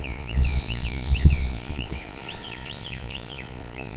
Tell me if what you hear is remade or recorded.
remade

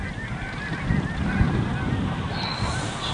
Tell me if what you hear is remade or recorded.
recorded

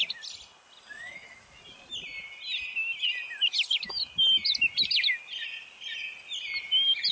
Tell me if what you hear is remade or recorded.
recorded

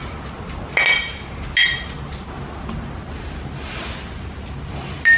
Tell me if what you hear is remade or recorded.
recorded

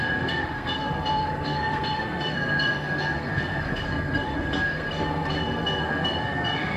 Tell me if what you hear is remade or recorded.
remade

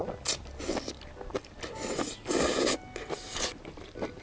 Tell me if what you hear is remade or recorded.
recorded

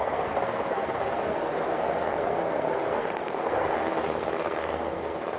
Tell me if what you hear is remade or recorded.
remade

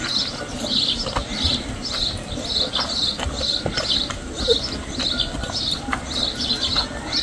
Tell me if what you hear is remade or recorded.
recorded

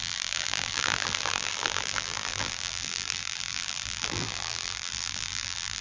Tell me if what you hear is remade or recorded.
remade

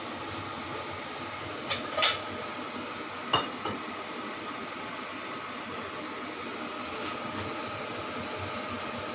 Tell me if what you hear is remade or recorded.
recorded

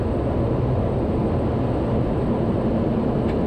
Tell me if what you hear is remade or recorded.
recorded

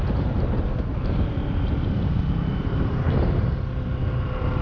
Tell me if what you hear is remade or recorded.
recorded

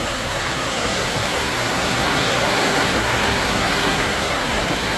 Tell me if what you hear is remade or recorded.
remade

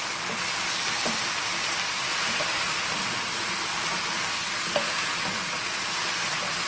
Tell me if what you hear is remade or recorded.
recorded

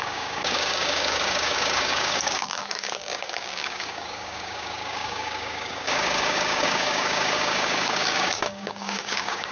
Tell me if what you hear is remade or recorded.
remade